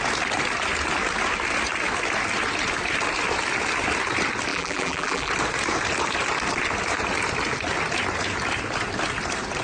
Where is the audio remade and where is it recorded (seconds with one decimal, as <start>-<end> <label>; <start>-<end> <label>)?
0.0-4.5 recorded; 4.5-5.3 remade; 5.3-9.6 recorded